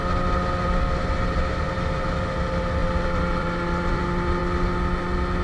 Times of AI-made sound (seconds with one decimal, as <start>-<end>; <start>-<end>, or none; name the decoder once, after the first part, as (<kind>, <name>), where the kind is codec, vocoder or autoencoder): 2.8-4.0 (vocoder, BigVGAN v2)